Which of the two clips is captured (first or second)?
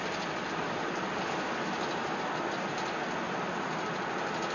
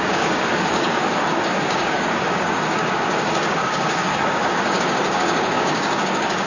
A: first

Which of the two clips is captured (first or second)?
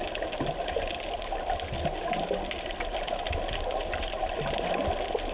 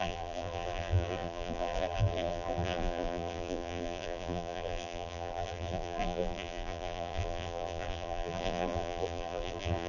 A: first